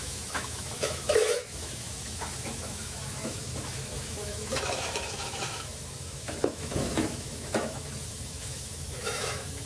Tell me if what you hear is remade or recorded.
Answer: remade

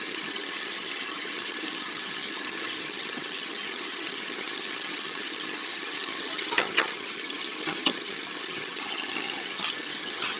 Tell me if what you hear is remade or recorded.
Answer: remade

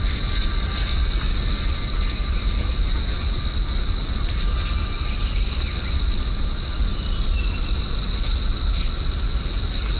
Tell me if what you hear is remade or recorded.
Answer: recorded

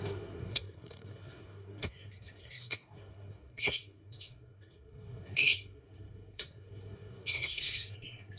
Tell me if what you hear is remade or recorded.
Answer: remade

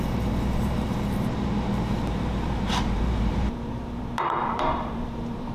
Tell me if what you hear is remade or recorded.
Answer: remade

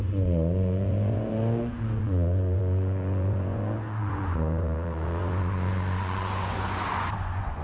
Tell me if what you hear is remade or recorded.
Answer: remade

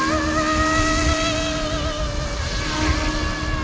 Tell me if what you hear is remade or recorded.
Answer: recorded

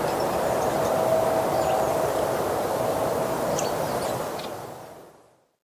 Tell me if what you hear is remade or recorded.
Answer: recorded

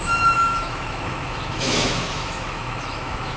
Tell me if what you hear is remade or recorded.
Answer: remade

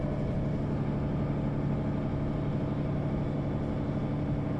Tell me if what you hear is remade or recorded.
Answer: recorded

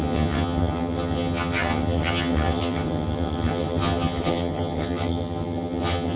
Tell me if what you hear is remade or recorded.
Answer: remade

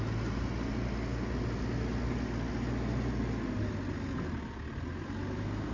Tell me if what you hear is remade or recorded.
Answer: recorded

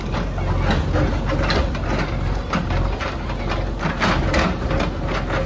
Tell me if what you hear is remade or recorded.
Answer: recorded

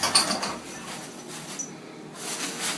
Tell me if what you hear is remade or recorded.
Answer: recorded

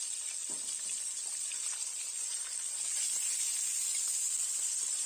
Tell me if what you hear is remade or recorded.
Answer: recorded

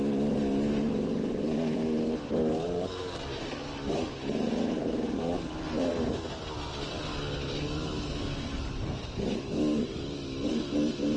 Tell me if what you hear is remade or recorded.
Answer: recorded